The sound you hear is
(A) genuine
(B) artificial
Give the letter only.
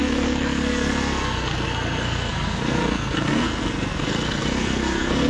B